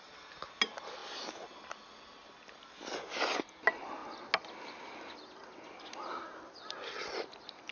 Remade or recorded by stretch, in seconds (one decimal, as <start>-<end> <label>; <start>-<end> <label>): 0.0-7.7 recorded